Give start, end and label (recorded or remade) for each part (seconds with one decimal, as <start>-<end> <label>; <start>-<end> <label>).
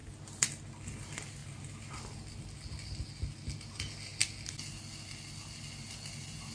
0.0-6.5 recorded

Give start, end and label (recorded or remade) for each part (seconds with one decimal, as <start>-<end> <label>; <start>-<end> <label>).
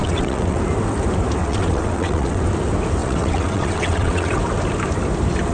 0.0-0.6 remade; 0.6-1.4 recorded; 1.4-2.4 remade; 2.4-3.0 recorded; 3.0-4.4 remade; 4.4-5.5 recorded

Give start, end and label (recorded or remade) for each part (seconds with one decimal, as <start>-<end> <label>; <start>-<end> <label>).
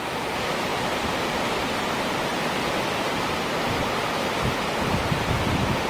0.0-2.3 remade; 2.3-4.4 recorded; 4.4-5.9 remade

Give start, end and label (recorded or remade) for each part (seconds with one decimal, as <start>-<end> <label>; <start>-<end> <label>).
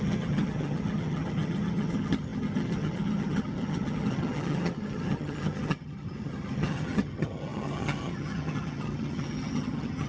0.0-10.1 remade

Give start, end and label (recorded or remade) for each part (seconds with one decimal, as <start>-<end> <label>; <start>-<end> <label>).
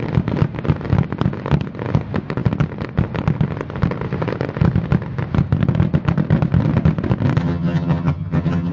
0.0-7.4 recorded; 7.4-8.7 remade